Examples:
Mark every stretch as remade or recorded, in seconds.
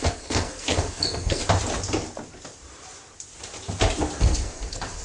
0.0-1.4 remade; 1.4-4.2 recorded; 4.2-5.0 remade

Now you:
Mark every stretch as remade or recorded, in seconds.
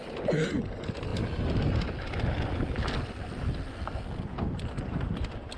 0.0-5.6 recorded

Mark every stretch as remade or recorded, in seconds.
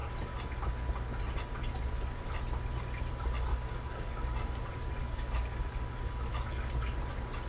0.0-3.5 recorded; 3.5-4.6 remade; 4.6-5.0 recorded; 5.0-6.7 remade; 6.7-7.5 recorded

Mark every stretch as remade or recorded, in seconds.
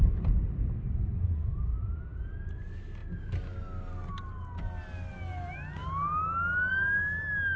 0.0-7.6 recorded